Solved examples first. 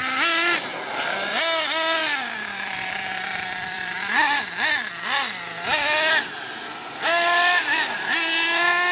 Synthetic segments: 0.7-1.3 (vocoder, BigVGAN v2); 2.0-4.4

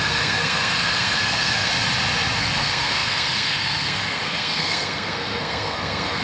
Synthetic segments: 0.0-1.7 (codec, SNAC); 2.4-6.2

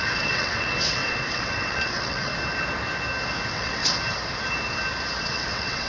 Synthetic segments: 0.0-2.3 (vocoder, WaveNeXt); 3.5-3.9; 5.2-5.9

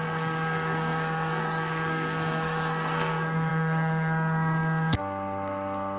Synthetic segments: 0.0-6.0 (codec, SNAC)

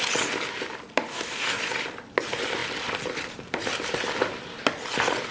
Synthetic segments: 1.1-1.6 (codec, DAC)

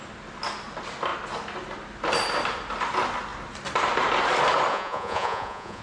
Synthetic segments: 4.7-5.8 (vocoder, Vocos)

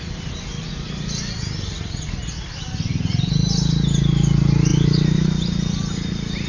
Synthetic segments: none